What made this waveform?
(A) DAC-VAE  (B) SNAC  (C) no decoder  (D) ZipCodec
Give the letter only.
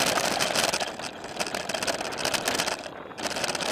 C